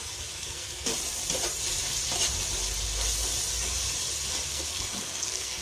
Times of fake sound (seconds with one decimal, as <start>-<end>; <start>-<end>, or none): 0.0-0.9; 4.3-5.6